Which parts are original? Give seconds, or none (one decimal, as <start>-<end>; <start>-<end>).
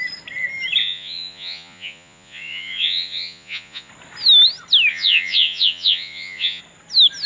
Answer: 0.0-0.8; 3.9-4.9; 6.6-7.3